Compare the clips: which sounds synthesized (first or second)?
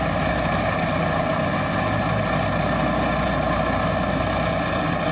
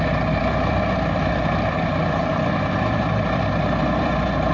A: second